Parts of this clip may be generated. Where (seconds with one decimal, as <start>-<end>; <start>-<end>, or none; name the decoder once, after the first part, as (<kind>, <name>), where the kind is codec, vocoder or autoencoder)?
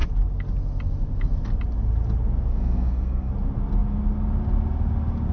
2.5-3.3 (codec, SNAC)